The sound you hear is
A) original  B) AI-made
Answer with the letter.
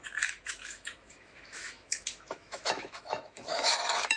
B